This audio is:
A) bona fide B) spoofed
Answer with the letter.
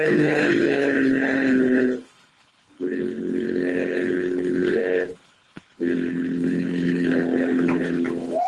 B